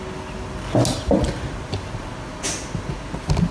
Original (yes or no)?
yes